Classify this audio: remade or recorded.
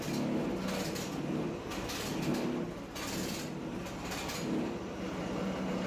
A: recorded